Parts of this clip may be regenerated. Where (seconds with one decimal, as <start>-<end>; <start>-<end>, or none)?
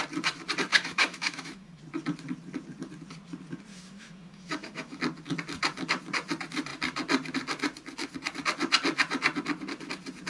0.7-1.8; 3.7-5.0